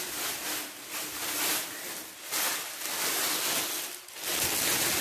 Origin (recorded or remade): recorded